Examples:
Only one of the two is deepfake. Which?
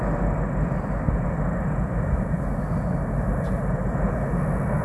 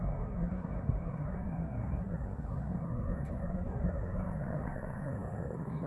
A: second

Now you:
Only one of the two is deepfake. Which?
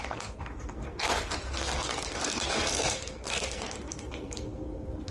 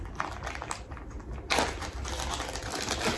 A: first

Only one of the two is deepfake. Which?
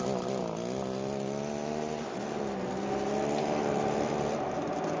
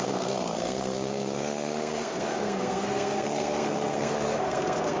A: second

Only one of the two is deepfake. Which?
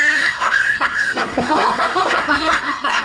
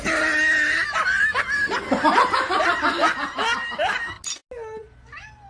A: first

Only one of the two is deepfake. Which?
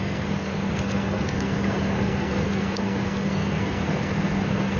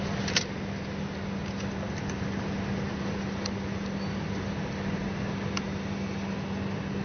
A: first